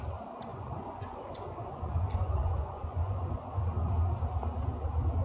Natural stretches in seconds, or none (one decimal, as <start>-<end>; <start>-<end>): 0.0-0.5; 3.6-5.2